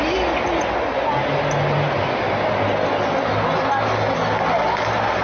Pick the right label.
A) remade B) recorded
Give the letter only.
B